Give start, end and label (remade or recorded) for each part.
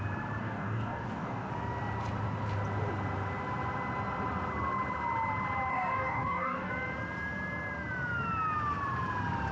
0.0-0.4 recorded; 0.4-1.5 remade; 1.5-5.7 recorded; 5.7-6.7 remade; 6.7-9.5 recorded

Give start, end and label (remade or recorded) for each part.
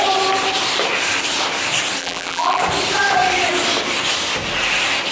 0.0-2.0 recorded; 2.0-2.6 remade; 2.6-5.1 recorded